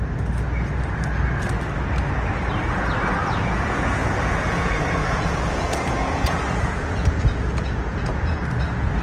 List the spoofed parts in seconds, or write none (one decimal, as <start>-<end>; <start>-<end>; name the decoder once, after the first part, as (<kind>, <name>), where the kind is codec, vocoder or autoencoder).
3.2-8.4 (vocoder, Vocos)